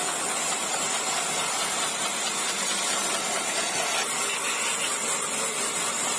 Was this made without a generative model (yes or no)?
yes